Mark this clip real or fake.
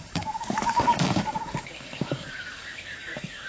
fake